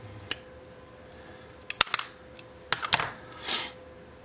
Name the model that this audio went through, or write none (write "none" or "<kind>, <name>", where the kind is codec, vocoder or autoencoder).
none